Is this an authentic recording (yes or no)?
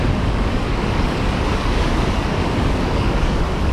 no